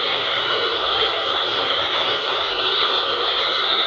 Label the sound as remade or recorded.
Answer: remade